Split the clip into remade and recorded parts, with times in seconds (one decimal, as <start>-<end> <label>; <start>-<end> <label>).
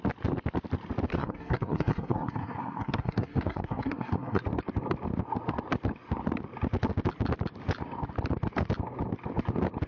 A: 0.0-1.1 recorded; 1.1-4.4 remade; 4.4-9.9 recorded